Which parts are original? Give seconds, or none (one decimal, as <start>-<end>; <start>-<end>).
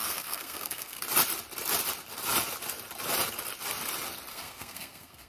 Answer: 1.0-4.3